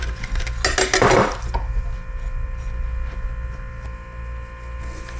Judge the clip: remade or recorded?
recorded